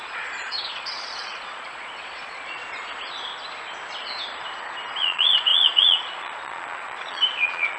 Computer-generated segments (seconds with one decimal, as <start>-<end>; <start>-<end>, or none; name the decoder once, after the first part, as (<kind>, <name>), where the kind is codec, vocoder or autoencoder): 0.0-2.6 (vocoder, Vocos); 5.0-7.8

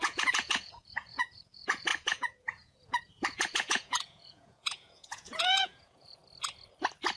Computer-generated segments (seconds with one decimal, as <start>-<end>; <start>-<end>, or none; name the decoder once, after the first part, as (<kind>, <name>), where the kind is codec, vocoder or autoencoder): 0.0-6.2 (vocoder, Vocos)

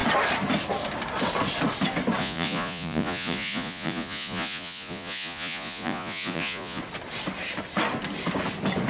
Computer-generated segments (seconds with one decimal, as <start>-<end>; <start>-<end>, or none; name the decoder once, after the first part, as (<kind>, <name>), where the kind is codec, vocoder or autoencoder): 2.2-6.8 (vocoder, Vocos)

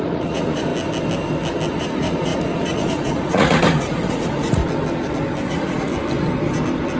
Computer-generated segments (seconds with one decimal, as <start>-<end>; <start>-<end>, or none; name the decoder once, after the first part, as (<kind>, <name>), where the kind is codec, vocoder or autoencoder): 0.0-0.7 (vocoder, Vocos); 1.7-4.6; 5.5-5.9

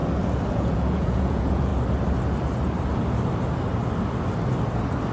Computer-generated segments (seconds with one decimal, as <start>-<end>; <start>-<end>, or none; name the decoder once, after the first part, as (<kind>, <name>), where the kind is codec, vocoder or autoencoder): 0.5-1.7 (vocoder, Vocos)

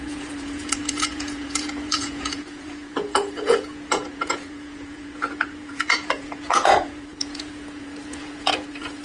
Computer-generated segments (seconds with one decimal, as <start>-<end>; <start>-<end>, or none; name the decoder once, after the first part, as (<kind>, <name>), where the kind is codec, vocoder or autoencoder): 0.0-9.0 (vocoder, Vocos)

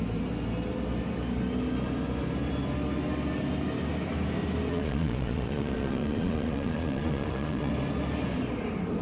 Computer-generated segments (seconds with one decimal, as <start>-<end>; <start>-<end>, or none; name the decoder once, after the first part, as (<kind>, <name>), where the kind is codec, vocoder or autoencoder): 4.7-7.7 (vocoder, Vocos)